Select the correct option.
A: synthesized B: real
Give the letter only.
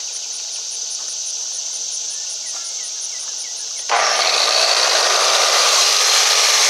A